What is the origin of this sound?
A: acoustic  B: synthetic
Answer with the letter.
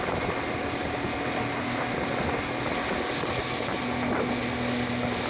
A